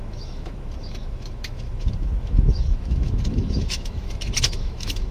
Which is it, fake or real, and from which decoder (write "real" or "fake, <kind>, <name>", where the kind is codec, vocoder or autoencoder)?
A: fake, autoencoder, DAC-VAE